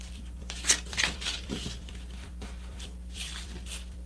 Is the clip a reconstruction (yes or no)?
yes